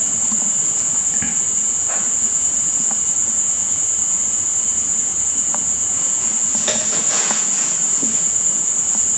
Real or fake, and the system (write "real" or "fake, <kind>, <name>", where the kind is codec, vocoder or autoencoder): fake, vocoder, Vocos